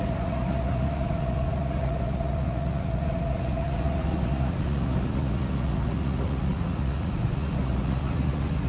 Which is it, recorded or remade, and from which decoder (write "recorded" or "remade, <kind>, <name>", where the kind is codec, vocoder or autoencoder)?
remade, vocoder, Vocos